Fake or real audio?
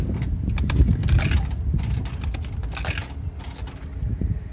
real